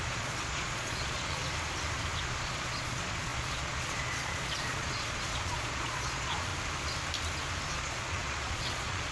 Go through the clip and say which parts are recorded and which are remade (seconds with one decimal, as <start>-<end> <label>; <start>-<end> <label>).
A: 0.0-1.4 remade; 1.4-2.2 recorded; 2.2-6.5 remade; 6.5-7.7 recorded; 7.7-9.1 remade